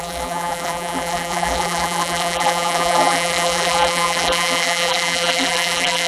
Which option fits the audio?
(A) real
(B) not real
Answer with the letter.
B